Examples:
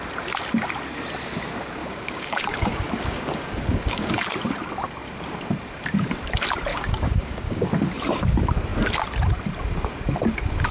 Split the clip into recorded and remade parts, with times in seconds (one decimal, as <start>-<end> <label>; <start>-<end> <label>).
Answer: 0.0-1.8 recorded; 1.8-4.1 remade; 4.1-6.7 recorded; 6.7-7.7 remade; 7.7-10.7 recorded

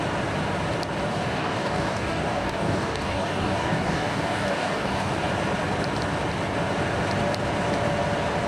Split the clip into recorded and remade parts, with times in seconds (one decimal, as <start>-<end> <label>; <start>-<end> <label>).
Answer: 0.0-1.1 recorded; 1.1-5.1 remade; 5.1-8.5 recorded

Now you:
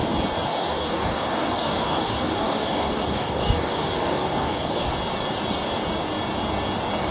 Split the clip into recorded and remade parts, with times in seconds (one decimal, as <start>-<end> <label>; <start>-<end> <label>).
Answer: 0.0-0.6 recorded; 0.6-4.9 remade; 4.9-7.1 recorded